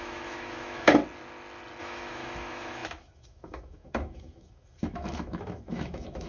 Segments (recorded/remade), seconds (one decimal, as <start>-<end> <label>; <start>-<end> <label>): 0.0-1.0 remade; 1.0-1.8 recorded; 1.8-6.3 remade

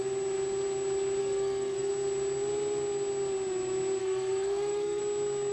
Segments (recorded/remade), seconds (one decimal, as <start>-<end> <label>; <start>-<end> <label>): 0.0-1.2 recorded; 1.2-1.9 remade; 1.9-4.0 recorded; 4.0-5.0 remade; 5.0-5.5 recorded

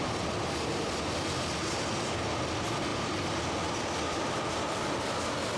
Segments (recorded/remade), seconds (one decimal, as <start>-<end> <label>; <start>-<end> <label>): 0.0-5.6 recorded

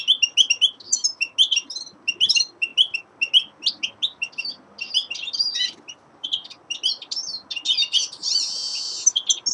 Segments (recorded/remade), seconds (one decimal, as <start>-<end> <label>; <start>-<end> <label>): 0.0-9.5 recorded